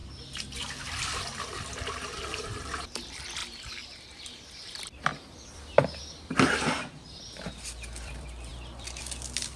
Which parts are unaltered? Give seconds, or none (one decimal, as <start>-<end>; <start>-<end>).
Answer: none